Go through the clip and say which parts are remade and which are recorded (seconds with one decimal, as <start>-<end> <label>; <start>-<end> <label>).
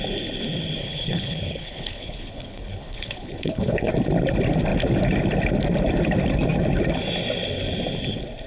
0.0-0.8 recorded; 0.8-3.9 remade; 3.9-8.5 recorded